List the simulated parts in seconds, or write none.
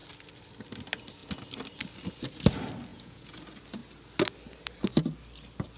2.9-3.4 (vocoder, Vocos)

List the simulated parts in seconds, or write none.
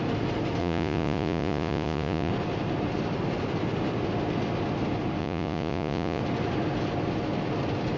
0.6-2.3 (vocoder, Vocos); 5.2-6.2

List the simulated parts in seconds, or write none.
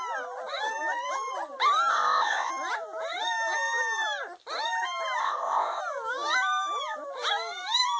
1.9-2.5 (codec, ZipCodec); 5.2-5.8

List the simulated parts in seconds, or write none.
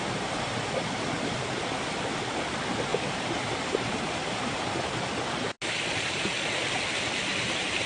2.9-4.7 (vocoder, BigVGAN v2); 7.3-7.9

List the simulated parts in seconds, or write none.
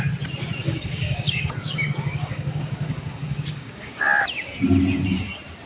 0.6-4.0 (codec, DAC)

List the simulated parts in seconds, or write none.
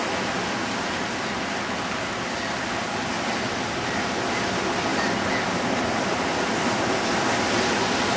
none